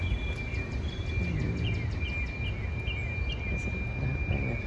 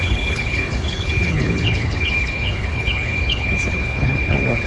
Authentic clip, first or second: first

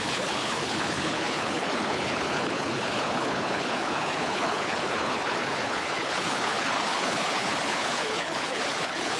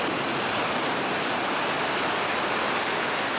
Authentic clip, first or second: second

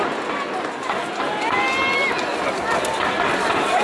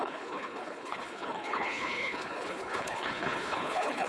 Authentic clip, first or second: first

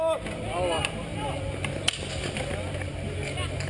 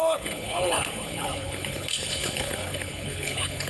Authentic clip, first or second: first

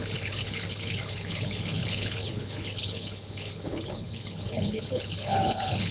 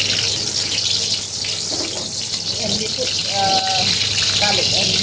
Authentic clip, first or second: second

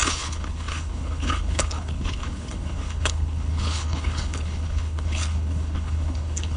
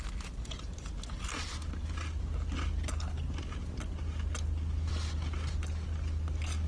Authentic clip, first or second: second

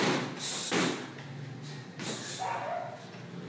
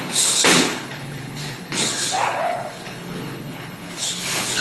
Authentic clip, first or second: first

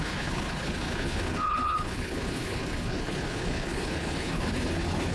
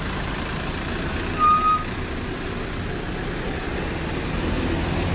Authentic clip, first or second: second